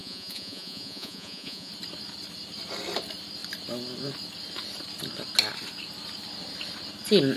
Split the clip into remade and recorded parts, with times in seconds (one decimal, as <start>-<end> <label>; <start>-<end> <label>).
0.0-1.7 remade; 1.7-7.4 recorded